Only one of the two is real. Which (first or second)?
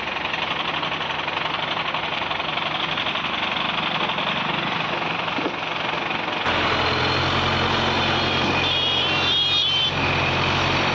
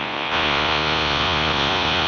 first